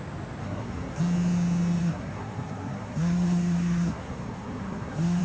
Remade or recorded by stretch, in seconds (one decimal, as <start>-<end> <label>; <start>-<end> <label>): 0.0-0.4 recorded; 0.4-1.0 remade; 1.0-1.8 recorded; 1.8-5.2 remade